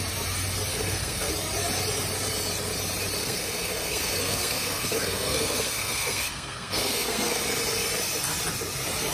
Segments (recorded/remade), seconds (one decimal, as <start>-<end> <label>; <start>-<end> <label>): 0.0-0.7 recorded; 0.7-1.3 remade; 1.3-3.2 recorded; 3.2-7.4 remade; 7.4-9.1 recorded